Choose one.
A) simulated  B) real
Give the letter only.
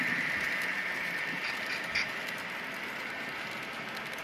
B